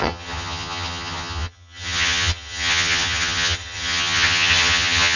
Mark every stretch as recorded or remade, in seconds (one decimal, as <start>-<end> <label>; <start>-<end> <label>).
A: 0.0-5.2 remade